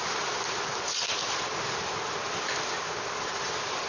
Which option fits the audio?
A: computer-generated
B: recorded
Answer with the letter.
B